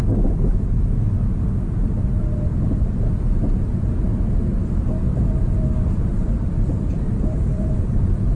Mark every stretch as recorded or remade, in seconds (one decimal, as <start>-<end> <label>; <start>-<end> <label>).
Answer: 0.0-2.5 recorded; 2.5-3.2 remade; 3.2-5.1 recorded; 5.1-8.4 remade